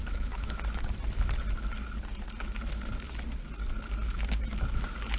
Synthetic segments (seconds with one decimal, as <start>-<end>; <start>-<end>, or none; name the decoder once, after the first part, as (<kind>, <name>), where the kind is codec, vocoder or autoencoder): 0.0-0.6 (autoencoder, DAC-VAE)